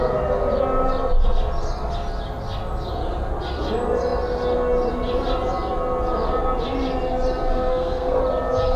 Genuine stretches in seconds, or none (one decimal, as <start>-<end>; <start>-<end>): 0.0-7.5; 8.2-8.8